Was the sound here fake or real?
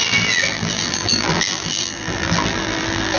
fake